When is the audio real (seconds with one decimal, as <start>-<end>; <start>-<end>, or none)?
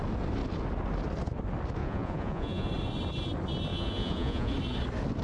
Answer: 0.0-1.8; 2.7-3.7; 4.5-5.2